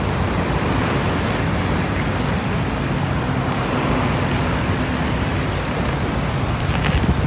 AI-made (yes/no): no